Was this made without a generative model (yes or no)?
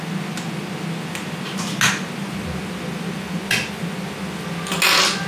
yes